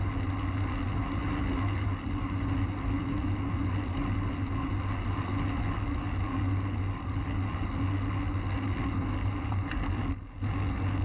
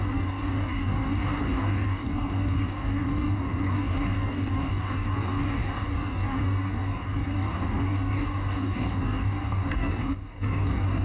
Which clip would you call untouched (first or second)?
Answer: first